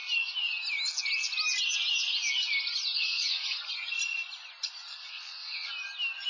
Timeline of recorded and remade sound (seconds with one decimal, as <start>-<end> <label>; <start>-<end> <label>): 0.0-3.0 recorded; 3.0-3.6 remade; 3.6-4.9 recorded; 4.9-5.7 remade; 5.7-6.3 recorded